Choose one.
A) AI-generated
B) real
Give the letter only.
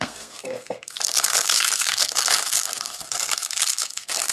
A